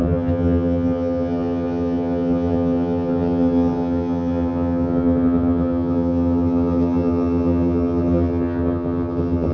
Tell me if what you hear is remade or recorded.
remade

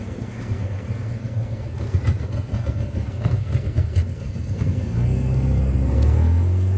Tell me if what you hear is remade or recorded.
remade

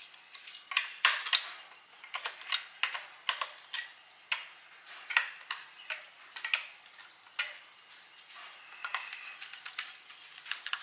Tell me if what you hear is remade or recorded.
recorded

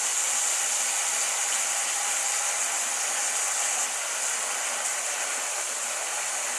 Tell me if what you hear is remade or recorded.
recorded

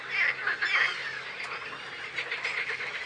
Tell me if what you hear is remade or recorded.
recorded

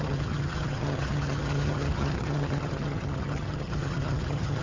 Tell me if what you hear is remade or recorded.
remade